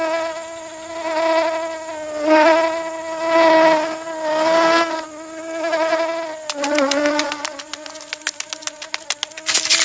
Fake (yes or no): no